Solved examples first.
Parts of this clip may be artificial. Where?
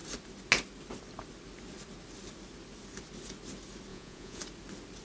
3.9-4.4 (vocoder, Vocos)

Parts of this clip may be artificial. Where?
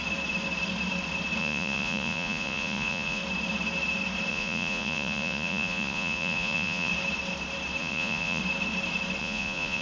1.4-3.2 (vocoder, Vocos); 4.3-6.9; 7.8-8.4; 9.2-9.8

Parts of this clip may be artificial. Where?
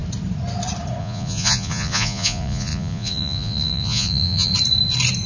1.0-4.5 (vocoder, Vocos)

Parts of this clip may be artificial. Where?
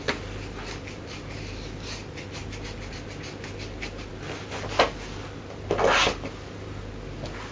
none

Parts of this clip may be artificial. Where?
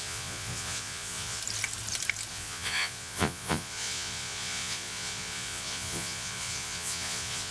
0.0-1.4 (vocoder, Vocos); 2.3-7.5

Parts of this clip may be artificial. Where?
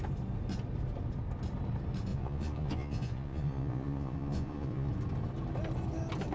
2.1-4.9 (vocoder, Vocos)